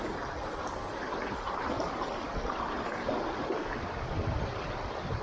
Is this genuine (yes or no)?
yes